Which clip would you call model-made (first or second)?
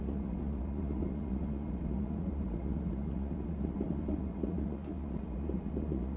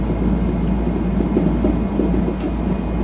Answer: first